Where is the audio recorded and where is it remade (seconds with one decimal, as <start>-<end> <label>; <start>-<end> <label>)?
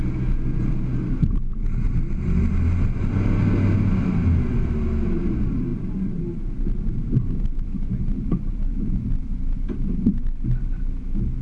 0.0-11.4 recorded